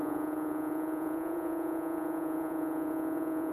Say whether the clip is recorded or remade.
remade